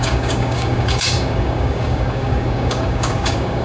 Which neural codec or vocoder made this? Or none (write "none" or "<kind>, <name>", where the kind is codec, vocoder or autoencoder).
codec, DAC